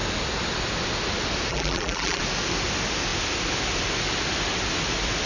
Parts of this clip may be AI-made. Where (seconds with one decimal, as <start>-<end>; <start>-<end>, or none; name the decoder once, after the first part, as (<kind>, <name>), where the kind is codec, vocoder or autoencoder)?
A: 1.5-2.2 (vocoder, BigVGAN v2)

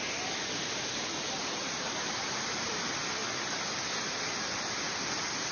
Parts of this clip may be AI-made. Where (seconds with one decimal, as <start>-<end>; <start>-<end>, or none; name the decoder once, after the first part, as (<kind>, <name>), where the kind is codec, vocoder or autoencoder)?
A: 0.0-3.2 (vocoder, BigVGAN v2)

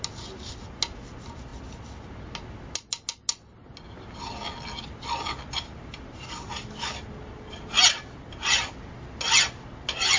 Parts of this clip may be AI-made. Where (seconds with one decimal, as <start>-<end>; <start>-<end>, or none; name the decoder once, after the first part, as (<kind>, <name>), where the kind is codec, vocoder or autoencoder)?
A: none